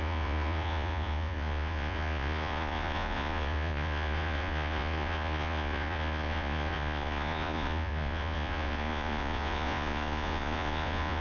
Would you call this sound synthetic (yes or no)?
yes